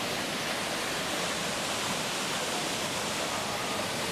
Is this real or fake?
real